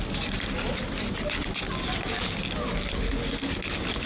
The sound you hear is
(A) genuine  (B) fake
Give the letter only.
A